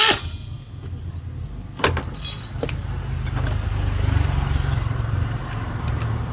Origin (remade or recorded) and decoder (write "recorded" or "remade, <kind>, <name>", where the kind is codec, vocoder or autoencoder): recorded